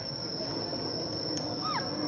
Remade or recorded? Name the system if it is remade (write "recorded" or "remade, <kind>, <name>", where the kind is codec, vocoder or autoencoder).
recorded